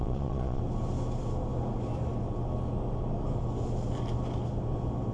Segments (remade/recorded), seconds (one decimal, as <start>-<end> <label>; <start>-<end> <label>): 0.0-0.6 remade; 0.6-5.1 recorded